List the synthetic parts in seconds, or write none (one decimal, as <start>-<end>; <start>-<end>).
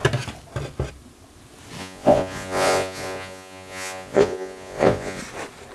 1.8-5.2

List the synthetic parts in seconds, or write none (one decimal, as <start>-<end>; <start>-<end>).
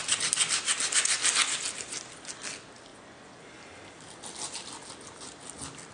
2.9-3.4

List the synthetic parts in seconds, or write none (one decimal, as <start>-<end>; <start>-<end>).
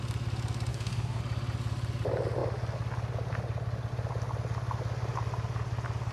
0.7-1.2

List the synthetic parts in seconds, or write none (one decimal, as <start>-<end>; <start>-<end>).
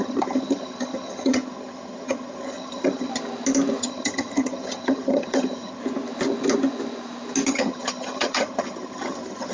0.0-3.1; 3.8-5.8; 7.5-9.5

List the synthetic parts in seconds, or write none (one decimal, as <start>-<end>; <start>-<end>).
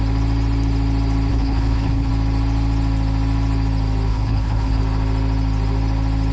1.3-2.1; 4.1-4.8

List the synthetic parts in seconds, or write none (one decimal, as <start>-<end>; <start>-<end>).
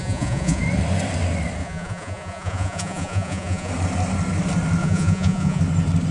0.0-0.6; 1.6-3.7; 4.8-5.6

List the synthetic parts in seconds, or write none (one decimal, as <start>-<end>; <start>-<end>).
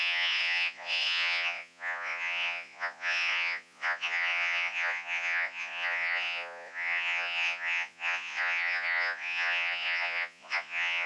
0.0-11.1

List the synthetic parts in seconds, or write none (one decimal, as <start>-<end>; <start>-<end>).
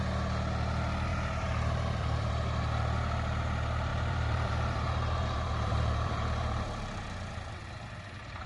1.1-2.3; 3.9-7.6